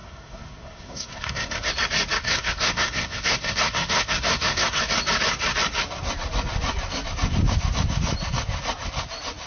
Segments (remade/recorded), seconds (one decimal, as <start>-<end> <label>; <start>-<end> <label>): 0.0-1.7 remade; 1.7-2.2 recorded; 2.2-4.8 remade; 4.8-9.5 recorded